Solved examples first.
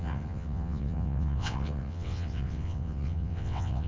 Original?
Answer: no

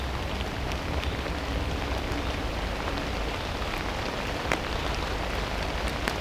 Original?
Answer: yes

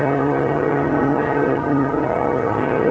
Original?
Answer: no